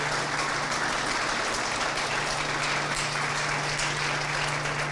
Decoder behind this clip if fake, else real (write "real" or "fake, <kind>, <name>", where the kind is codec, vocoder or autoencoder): real